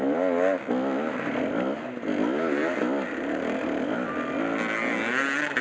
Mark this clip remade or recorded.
recorded